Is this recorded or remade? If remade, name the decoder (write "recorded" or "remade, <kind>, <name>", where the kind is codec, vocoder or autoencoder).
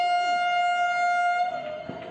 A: recorded